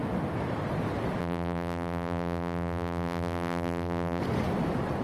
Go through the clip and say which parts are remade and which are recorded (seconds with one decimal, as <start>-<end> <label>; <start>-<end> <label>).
0.0-1.2 recorded; 1.2-4.2 remade; 4.2-5.0 recorded

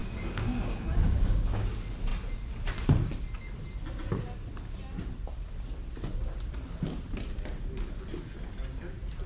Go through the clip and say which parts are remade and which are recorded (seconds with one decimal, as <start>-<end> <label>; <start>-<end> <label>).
0.0-1.7 remade; 1.7-9.3 recorded

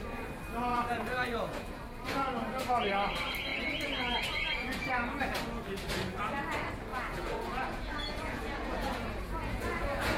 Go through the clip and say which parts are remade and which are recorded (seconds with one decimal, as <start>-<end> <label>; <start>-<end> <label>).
0.0-0.7 recorded; 0.7-1.8 remade; 1.8-6.9 recorded; 6.9-10.2 remade

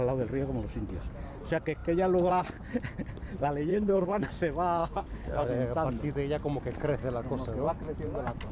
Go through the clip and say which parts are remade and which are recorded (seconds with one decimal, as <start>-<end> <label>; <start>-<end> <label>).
0.0-3.7 recorded; 3.7-4.3 remade; 4.3-4.8 recorded; 4.8-5.5 remade; 5.5-8.5 recorded

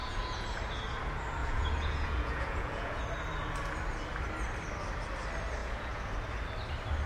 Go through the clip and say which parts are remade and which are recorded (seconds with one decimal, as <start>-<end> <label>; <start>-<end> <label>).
0.0-0.6 remade; 0.6-1.4 recorded; 1.4-3.0 remade; 3.0-5.6 recorded; 5.6-6.1 remade; 6.1-7.1 recorded

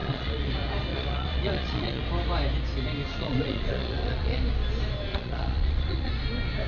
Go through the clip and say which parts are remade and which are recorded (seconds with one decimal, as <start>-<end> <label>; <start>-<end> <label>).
0.0-0.5 remade; 0.5-0.9 recorded; 0.9-2.0 remade; 2.0-3.1 recorded; 3.1-4.4 remade; 4.4-5.1 recorded; 5.1-6.1 remade; 6.1-6.7 recorded

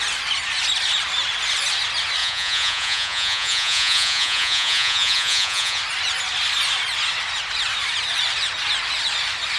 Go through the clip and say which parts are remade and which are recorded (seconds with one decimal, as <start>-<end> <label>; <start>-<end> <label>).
0.0-2.2 recorded; 2.2-5.8 remade; 5.8-9.6 recorded

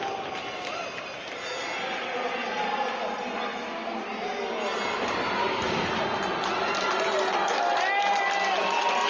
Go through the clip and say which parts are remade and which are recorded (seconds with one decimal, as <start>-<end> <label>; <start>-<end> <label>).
0.0-9.1 recorded